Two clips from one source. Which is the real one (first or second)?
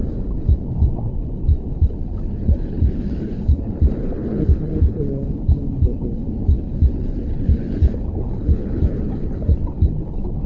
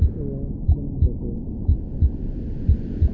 second